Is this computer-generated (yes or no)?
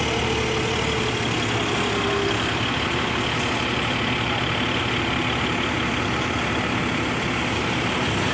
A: no